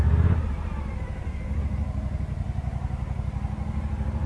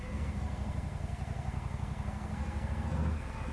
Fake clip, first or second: second